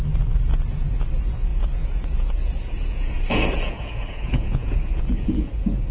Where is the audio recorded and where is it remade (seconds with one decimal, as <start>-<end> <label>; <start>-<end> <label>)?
0.0-1.1 recorded; 1.1-5.9 remade